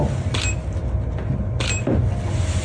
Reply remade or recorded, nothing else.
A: recorded